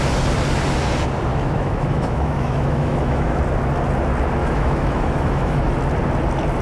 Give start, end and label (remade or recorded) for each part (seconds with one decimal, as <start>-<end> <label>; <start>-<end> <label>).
0.0-1.3 recorded; 1.3-3.4 remade; 3.4-4.4 recorded; 4.4-5.6 remade; 5.6-6.6 recorded